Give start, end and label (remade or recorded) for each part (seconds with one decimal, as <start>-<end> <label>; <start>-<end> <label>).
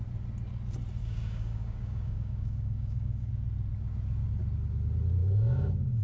0.0-1.0 recorded; 1.0-3.3 remade; 3.3-5.2 recorded; 5.2-6.0 remade